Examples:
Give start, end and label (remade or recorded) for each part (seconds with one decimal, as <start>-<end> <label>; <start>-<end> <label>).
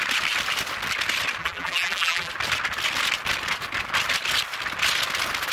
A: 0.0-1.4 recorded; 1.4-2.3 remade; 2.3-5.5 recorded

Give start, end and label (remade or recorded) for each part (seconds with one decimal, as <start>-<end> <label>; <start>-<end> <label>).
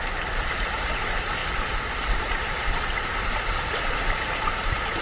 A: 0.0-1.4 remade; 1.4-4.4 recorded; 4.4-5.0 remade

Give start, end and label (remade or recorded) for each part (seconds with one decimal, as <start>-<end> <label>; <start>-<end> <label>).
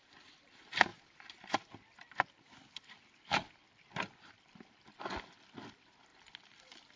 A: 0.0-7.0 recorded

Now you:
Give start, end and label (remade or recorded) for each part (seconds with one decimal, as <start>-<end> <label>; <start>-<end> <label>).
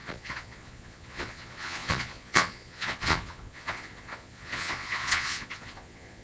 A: 0.0-6.2 remade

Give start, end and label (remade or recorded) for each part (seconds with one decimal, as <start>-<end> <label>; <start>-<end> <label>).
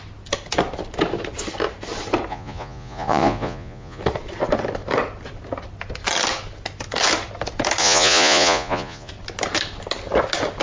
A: 0.0-2.3 recorded; 2.3-4.0 remade; 4.0-7.8 recorded; 7.8-9.1 remade; 9.1-10.6 recorded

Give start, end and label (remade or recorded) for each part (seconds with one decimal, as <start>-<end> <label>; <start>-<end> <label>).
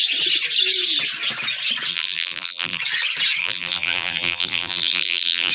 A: 0.0-1.9 recorded; 1.9-2.8 remade; 2.8-3.4 recorded; 3.4-5.5 remade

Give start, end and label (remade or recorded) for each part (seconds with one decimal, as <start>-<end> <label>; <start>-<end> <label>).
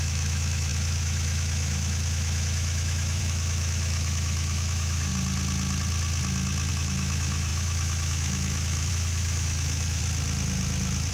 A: 0.0-5.1 remade; 5.1-6.7 recorded; 6.7-10.0 remade; 10.0-11.1 recorded